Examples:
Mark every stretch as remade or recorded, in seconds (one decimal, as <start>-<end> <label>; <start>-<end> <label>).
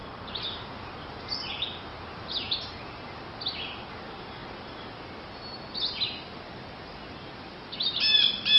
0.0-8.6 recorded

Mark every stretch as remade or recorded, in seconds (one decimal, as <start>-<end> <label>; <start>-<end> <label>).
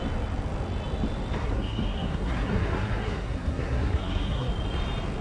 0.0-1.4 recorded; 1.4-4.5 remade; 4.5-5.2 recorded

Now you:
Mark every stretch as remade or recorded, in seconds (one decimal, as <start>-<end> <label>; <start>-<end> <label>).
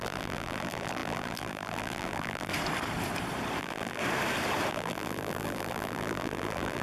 0.0-2.5 remade; 2.5-3.6 recorded; 3.6-4.0 remade; 4.0-4.7 recorded; 4.7-6.8 remade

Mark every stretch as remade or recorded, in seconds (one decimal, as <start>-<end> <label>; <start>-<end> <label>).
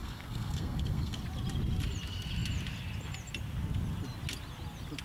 0.0-1.2 remade; 1.2-5.0 recorded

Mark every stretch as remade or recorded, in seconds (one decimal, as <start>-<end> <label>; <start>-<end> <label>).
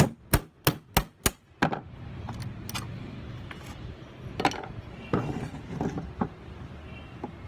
0.0-7.5 recorded